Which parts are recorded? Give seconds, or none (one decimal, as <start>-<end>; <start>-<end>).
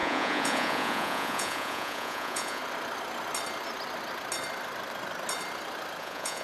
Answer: 2.6-6.0